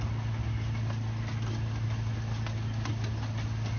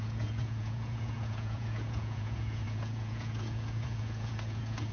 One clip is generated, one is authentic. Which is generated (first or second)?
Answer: second